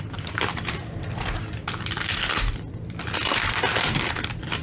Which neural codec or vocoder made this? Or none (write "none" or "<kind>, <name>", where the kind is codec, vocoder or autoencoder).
vocoder, BigVGAN v2